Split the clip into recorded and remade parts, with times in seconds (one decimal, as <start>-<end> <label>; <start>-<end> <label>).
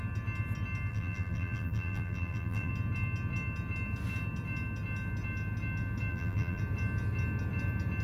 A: 0.0-0.9 recorded; 0.9-2.7 remade; 2.7-6.1 recorded; 6.1-6.6 remade; 6.6-8.0 recorded